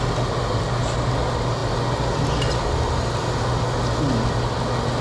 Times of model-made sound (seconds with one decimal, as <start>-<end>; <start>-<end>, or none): none